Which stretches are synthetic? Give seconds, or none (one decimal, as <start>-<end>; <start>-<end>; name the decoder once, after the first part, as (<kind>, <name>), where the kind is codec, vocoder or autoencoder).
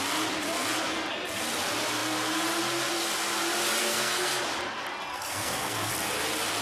3.8-4.4 (codec, SNAC); 5.1-5.9